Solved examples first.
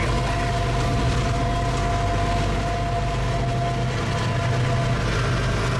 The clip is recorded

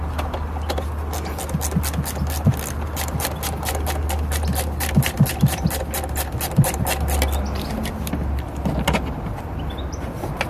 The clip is remade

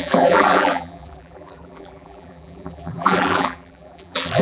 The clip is remade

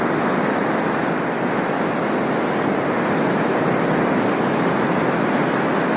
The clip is recorded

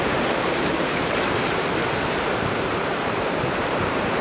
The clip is remade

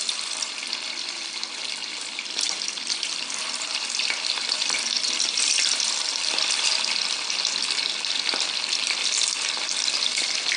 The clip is remade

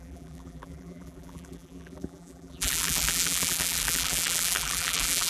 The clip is remade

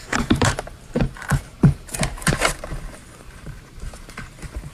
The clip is remade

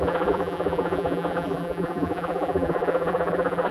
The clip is remade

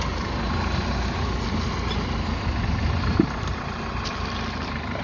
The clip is recorded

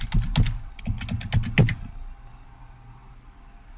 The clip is recorded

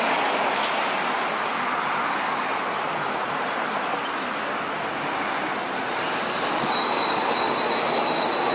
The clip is recorded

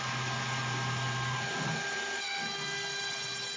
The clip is recorded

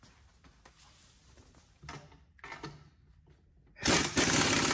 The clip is recorded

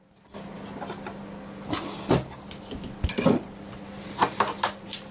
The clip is recorded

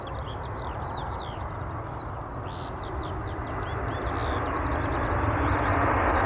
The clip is recorded